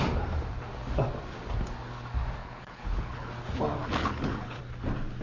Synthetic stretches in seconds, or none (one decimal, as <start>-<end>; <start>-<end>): 2.4-3.3; 4.0-4.6